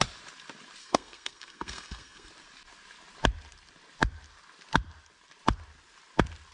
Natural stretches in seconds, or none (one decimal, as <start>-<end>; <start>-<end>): 0.0-0.8; 2.3-6.5